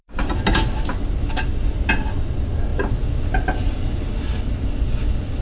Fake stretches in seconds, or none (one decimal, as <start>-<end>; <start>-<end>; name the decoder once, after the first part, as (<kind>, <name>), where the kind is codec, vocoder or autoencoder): 1.2-1.9 (vocoder, BigVGAN v2); 2.7-4.1